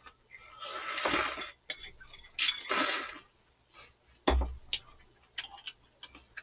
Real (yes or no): yes